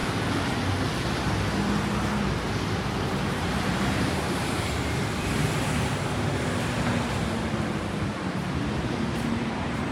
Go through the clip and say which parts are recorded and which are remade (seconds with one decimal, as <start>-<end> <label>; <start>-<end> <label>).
0.0-3.2 recorded; 3.2-5.0 remade; 5.0-8.4 recorded; 8.4-9.9 remade